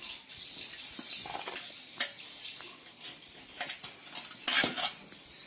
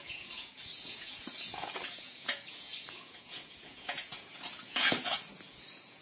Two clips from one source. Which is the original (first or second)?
first